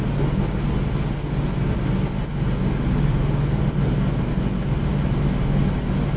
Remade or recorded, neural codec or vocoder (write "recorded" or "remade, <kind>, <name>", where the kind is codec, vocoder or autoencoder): recorded